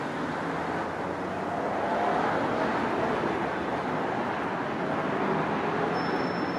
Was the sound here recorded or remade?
recorded